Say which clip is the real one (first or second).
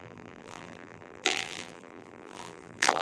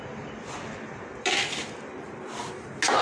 second